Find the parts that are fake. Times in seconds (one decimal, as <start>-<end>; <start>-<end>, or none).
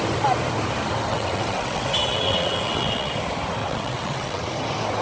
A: 1.1-3.1; 3.6-4.4